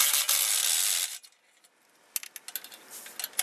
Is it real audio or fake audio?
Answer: real